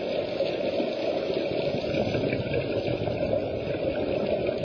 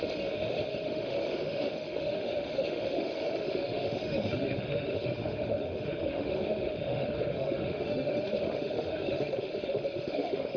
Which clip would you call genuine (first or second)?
first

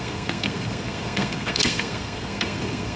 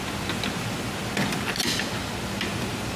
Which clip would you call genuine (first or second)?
second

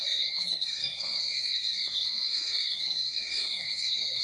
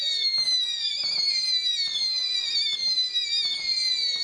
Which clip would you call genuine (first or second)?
second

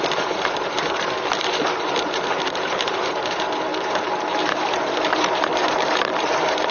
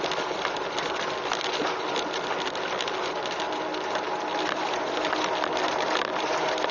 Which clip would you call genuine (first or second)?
second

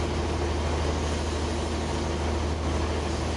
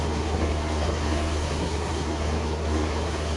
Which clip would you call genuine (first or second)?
first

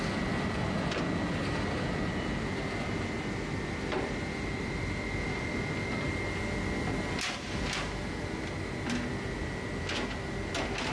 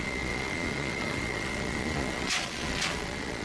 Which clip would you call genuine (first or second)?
first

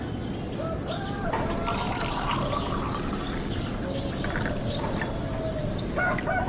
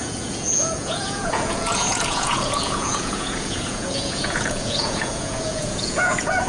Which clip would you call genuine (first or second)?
first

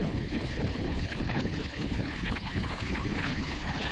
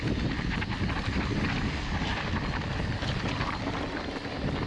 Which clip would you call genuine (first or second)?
second